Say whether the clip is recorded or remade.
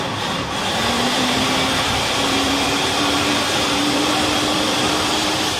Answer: remade